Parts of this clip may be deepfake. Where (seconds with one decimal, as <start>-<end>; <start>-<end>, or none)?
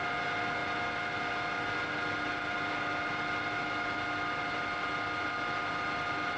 none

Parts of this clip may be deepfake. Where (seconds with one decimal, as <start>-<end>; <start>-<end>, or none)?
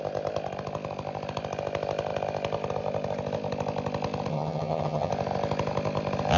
4.3-5.1